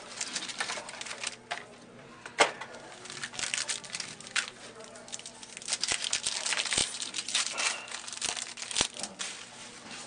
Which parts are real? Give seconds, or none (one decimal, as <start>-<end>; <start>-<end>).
0.0-10.1